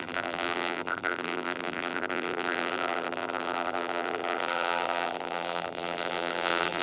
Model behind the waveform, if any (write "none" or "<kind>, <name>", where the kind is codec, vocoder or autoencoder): vocoder, BigVGAN v2